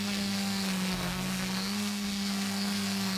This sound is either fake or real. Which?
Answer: fake